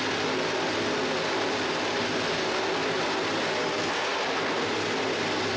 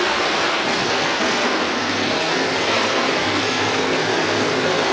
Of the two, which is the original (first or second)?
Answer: first